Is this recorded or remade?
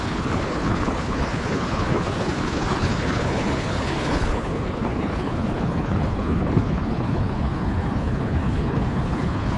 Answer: remade